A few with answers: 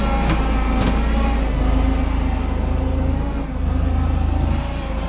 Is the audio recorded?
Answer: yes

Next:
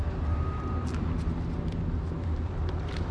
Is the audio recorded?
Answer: yes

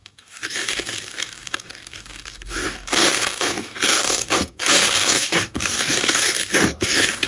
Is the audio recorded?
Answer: no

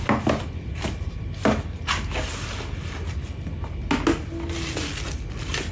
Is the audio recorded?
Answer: yes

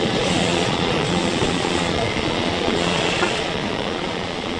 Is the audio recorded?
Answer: no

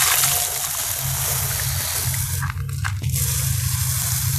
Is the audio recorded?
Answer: yes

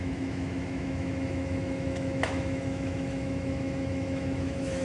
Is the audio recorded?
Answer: no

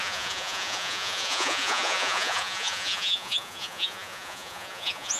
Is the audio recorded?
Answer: no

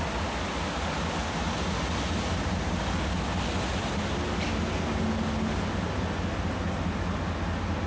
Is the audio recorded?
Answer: yes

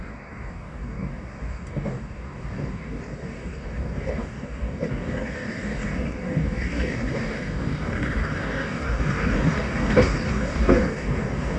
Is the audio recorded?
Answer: no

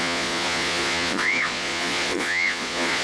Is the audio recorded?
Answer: no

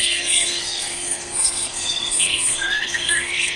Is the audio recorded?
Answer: no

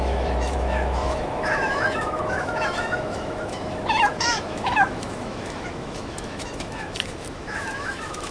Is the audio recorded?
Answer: no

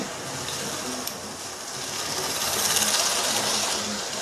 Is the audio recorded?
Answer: yes